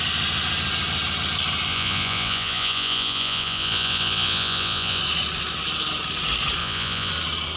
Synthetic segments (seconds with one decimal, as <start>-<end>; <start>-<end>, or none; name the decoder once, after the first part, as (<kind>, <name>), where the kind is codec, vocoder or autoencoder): 1.7-5.0 (vocoder, Vocos); 6.6-7.1